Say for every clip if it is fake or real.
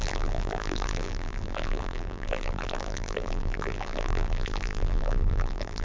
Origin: fake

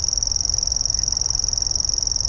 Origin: real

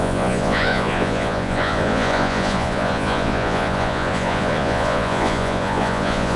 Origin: fake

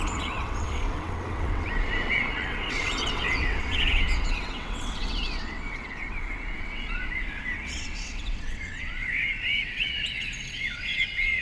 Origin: fake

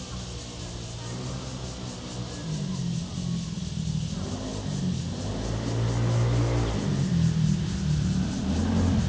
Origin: real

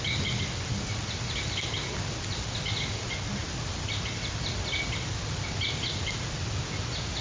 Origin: real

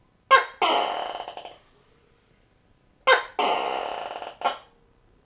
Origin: real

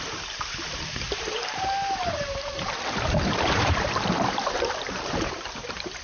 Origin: fake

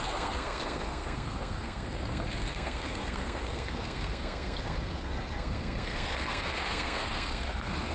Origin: fake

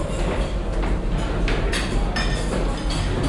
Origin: real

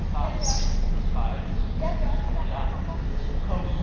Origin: real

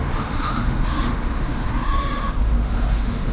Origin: fake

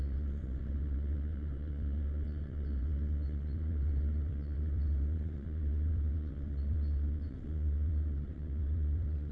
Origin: fake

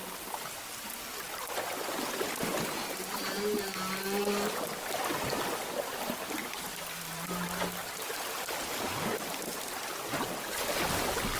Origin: real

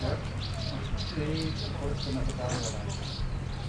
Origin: real